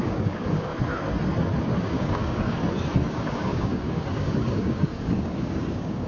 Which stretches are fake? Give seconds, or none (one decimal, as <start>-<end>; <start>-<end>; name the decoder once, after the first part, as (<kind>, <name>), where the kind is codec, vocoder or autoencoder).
0.0-0.7 (codec, DAC); 1.8-2.6; 3.1-6.1